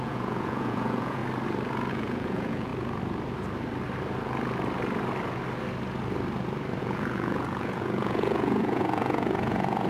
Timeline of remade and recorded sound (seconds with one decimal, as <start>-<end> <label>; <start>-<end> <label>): 0.0-1.2 remade; 1.2-1.9 recorded; 1.9-2.7 remade; 2.7-6.8 recorded; 6.8-9.9 remade